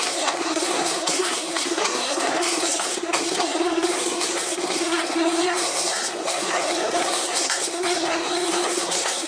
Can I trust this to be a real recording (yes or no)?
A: no